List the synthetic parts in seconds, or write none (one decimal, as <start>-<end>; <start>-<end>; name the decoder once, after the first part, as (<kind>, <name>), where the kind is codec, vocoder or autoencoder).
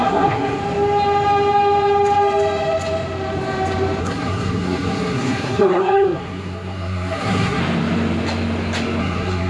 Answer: 0.0-0.6 (codec, SNAC); 4.0-7.6; 9.0-9.5